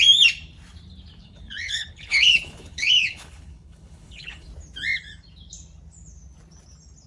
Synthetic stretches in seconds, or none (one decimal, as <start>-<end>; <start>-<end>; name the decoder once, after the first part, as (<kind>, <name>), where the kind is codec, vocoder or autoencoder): 1.2-4.5 (codec, HILCodec)